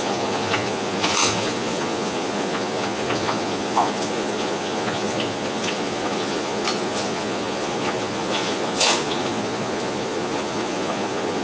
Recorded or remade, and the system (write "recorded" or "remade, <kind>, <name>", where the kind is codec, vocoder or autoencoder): remade, vocoder, Vocos